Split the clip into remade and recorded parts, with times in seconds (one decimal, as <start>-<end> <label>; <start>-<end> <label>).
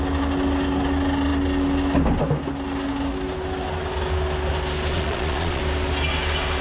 0.0-4.9 recorded; 4.9-5.6 remade; 5.6-6.6 recorded